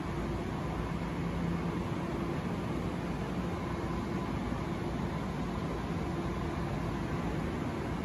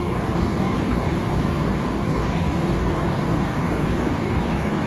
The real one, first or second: first